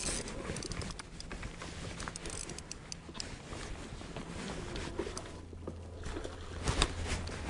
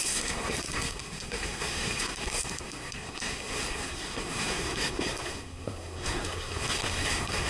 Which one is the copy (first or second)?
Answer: second